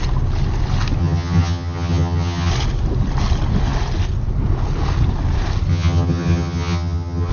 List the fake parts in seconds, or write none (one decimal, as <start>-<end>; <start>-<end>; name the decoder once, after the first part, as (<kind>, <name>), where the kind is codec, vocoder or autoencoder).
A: 1.0-2.5 (vocoder, HiFi-GAN); 5.7-7.3